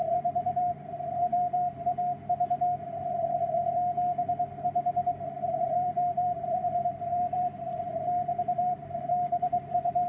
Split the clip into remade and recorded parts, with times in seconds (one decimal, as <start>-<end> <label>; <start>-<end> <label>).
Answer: 0.0-1.9 remade; 1.9-5.6 recorded; 5.6-10.1 remade